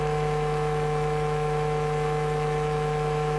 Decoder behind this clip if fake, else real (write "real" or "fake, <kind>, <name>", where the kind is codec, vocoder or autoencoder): fake, autoencoder, DAC-VAE